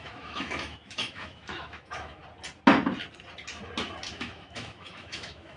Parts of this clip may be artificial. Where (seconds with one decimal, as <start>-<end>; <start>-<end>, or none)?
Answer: 0.0-2.2; 4.1-5.6